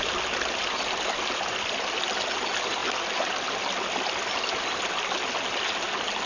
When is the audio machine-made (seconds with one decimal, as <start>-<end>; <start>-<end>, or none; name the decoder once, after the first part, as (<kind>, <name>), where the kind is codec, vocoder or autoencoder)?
none